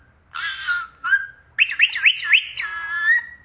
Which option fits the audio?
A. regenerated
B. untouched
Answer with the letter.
B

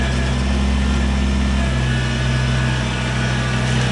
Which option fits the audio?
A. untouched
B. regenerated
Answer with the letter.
A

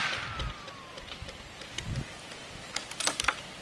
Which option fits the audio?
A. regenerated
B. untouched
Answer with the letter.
B